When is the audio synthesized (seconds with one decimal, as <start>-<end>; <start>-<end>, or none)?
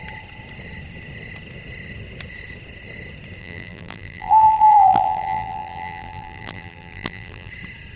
3.4-7.5